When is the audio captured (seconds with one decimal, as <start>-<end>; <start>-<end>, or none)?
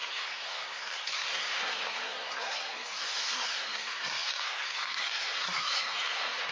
none